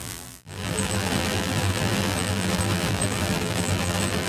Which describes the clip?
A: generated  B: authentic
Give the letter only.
A